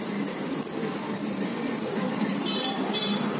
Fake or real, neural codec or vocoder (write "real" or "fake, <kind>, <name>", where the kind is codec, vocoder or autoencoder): fake, vocoder, BigVGAN v2